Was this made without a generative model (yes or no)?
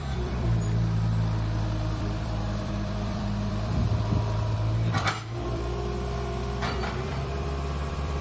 no